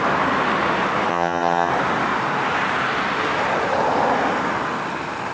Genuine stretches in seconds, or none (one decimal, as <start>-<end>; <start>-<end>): 0.0-1.1; 1.7-5.3